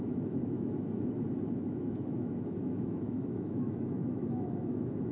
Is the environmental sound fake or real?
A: fake